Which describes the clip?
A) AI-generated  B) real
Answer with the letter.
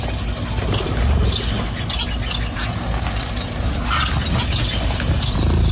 B